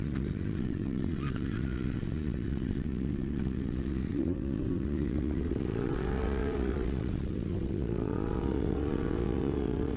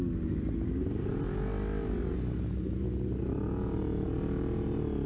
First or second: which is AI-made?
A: first